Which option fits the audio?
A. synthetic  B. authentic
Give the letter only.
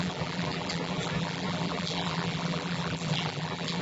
A